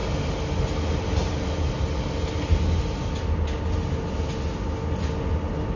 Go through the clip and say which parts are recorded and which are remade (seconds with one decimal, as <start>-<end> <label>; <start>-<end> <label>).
0.0-5.8 recorded